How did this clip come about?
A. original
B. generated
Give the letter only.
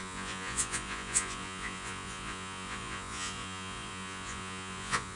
B